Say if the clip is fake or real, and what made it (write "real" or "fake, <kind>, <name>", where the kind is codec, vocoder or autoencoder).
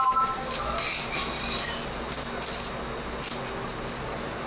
real